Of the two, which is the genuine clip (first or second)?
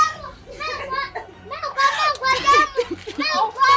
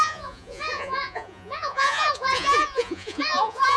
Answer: first